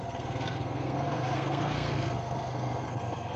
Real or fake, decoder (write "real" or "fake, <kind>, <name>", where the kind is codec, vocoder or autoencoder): fake, codec, SNAC